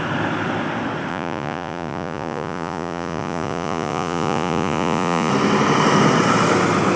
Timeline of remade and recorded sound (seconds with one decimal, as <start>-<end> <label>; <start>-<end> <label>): 0.0-1.1 recorded; 1.1-5.3 remade; 5.3-7.0 recorded